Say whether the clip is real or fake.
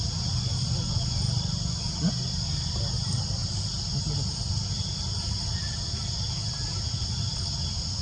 real